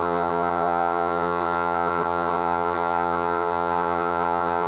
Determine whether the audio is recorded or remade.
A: remade